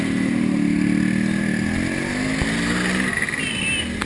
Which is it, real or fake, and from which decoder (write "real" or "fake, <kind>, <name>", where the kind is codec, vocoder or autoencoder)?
real